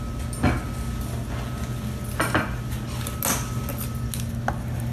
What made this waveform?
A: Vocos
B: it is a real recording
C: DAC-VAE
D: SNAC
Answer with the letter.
B